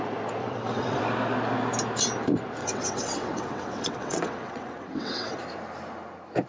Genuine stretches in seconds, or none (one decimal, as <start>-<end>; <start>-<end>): 0.0-0.4; 1.0-2.6; 5.4-6.5